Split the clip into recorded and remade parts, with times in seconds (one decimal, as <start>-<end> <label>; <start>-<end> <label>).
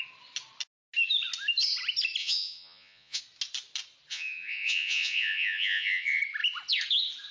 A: 0.0-2.2 recorded; 2.2-3.2 remade; 3.2-4.1 recorded; 4.1-6.2 remade; 6.2-7.3 recorded